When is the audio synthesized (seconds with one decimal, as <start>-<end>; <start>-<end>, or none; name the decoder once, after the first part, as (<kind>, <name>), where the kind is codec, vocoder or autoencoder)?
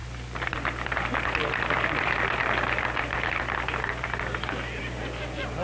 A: none